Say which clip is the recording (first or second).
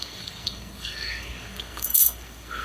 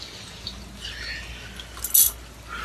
second